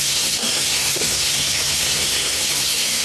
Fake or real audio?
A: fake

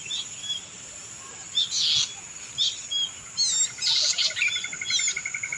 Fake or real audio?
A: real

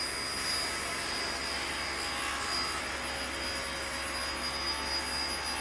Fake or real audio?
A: real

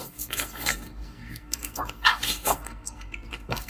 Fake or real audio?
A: fake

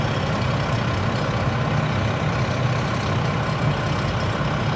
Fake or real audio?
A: real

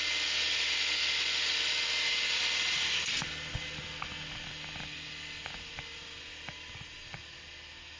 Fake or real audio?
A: real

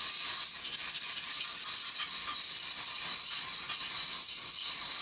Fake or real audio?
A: real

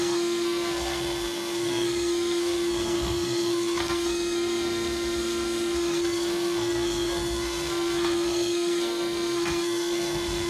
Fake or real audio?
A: fake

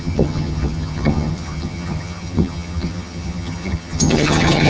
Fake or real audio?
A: fake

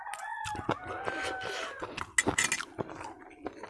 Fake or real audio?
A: real